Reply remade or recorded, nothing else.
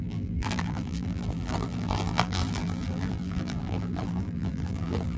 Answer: remade